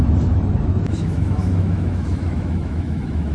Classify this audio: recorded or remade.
remade